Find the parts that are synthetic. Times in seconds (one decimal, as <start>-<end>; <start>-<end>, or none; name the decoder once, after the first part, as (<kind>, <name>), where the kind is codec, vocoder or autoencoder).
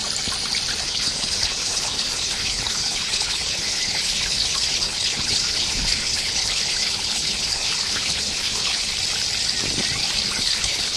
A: 0.8-8.9 (codec, HILCodec); 10.4-11.0